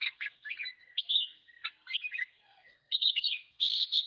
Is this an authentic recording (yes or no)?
no